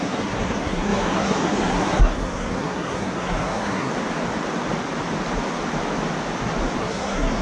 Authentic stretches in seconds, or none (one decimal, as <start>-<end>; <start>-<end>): 3.9-6.8